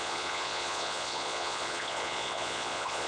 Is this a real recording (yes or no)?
no